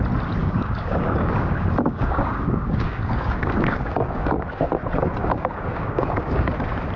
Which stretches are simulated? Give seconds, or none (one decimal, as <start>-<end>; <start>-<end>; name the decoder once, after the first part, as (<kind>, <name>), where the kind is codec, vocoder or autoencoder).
0.4-4.6 (codec, DAC); 5.2-6.5